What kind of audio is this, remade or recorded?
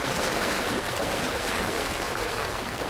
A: remade